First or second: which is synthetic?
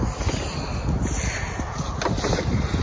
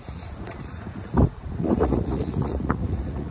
second